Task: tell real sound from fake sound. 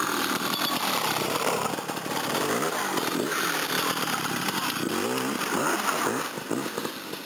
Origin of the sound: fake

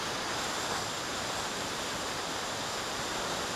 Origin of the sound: fake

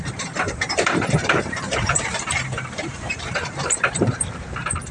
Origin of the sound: fake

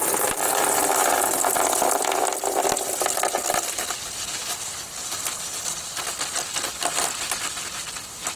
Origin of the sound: real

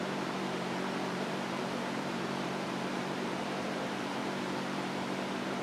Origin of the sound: fake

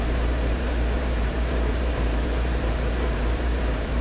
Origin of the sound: fake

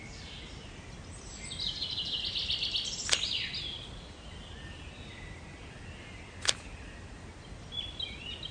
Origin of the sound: real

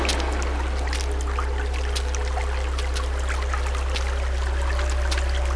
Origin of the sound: real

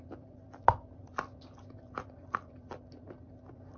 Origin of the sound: fake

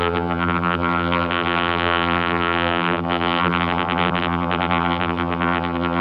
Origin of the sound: fake